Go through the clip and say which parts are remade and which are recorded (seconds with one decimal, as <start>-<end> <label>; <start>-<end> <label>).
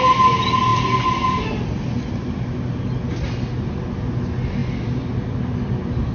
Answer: 0.0-6.1 recorded